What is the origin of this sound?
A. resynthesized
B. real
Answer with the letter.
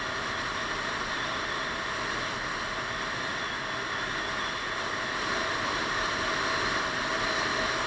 B